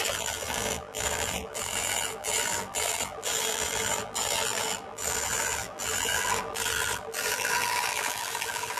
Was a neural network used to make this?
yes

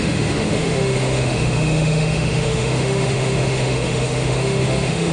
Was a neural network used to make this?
yes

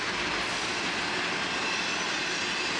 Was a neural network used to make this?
no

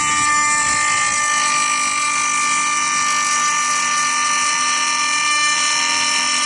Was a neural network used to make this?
no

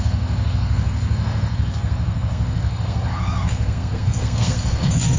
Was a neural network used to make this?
yes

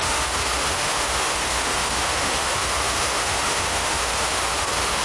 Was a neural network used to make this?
yes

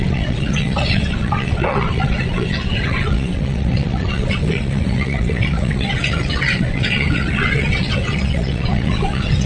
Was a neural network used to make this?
yes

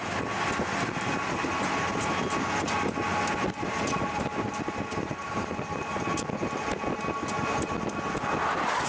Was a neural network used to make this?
no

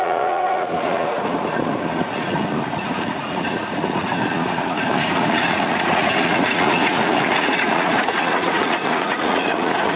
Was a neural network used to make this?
yes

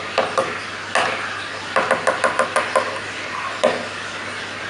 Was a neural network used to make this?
no